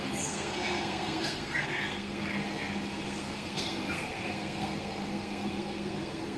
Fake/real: fake